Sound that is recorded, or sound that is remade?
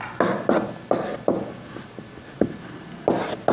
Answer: recorded